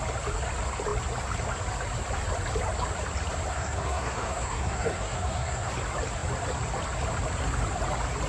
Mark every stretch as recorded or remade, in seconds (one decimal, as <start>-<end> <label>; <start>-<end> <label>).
0.0-3.5 recorded; 3.5-5.7 remade; 5.7-8.3 recorded